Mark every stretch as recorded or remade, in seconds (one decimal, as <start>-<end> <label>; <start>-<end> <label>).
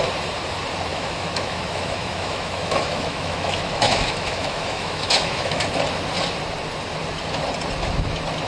0.0-0.9 recorded; 0.9-5.6 remade; 5.6-8.5 recorded